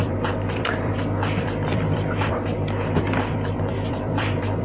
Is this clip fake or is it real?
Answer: fake